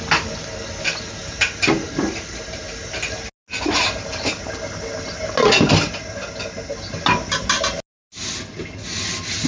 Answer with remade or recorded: recorded